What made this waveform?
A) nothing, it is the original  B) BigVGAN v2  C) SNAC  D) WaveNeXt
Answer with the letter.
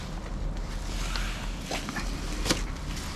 A